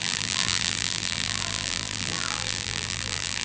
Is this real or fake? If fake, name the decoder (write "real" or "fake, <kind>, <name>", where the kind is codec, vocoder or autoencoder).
fake, vocoder, BigVGAN v2